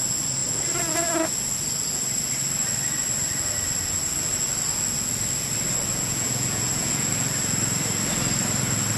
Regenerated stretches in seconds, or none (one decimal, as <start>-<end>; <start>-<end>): 5.9-7.1